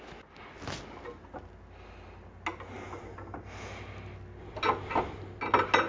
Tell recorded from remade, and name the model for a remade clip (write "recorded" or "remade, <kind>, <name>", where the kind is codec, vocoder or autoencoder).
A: recorded